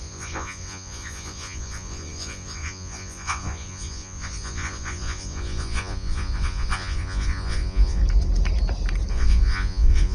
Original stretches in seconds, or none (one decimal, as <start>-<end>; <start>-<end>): 8.0-9.1